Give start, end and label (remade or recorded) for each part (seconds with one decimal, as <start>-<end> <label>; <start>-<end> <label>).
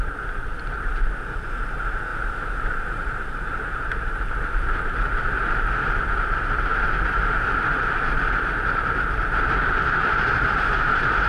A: 0.0-2.1 remade; 2.1-2.6 recorded; 2.6-11.3 remade